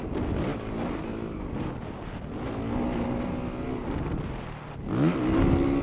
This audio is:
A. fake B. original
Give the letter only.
B